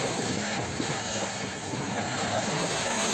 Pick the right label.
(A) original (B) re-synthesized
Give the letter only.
B